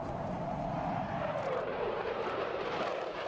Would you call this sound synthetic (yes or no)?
yes